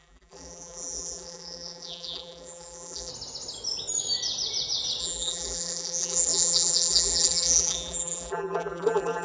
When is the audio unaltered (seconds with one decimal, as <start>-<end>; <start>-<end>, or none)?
3.1-5.0